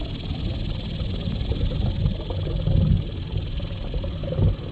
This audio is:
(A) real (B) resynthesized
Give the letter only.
A